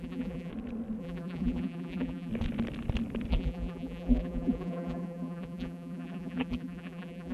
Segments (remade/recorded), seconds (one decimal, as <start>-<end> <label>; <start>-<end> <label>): 0.0-0.5 remade; 0.5-1.0 recorded; 1.0-2.3 remade; 2.3-3.3 recorded; 3.3-7.3 remade